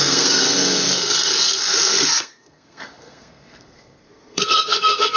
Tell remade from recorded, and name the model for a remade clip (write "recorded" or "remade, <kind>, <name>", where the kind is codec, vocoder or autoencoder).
remade, codec, SNAC